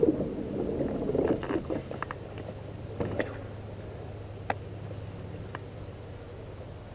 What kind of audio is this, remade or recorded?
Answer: recorded